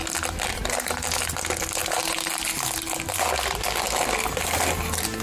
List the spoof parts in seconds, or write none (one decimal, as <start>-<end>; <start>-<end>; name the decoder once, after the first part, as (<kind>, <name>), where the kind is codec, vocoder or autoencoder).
none